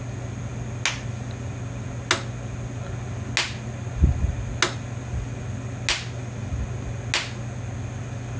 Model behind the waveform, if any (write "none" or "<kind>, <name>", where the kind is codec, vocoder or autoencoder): none